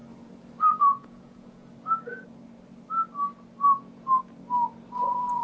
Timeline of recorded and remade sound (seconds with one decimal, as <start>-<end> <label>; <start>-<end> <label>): 0.0-0.8 recorded; 0.8-1.7 remade; 1.7-4.9 recorded; 4.9-5.4 remade